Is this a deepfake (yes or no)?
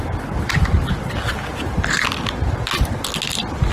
no